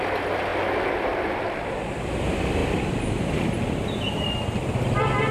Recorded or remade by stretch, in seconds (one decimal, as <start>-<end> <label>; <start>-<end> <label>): 0.0-5.3 recorded